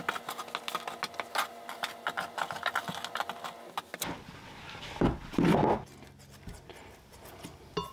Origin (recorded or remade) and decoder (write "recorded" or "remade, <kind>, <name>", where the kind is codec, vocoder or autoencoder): recorded